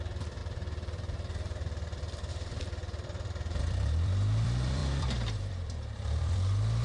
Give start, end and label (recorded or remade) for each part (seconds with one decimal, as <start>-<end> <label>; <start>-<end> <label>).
0.0-6.8 remade